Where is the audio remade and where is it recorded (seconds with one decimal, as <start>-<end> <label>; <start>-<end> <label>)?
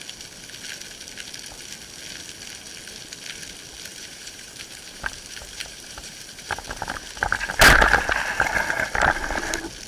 0.0-3.9 recorded; 3.9-7.5 remade; 7.5-9.9 recorded